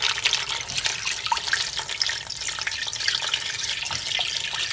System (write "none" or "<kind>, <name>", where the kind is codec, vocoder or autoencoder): none